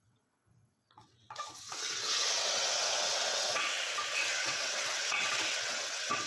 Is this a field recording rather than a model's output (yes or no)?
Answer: no